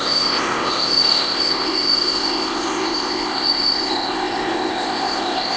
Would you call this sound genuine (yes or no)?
no